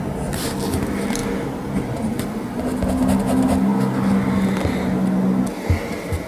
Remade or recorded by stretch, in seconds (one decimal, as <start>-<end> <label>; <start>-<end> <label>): 0.0-6.3 recorded